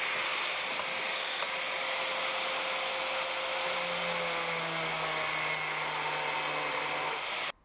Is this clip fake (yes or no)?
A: no